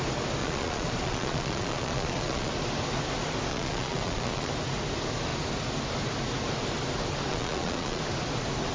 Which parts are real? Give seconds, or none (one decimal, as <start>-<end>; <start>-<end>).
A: 0.0-0.4; 2.5-3.5; 4.5-7.3; 8.0-8.7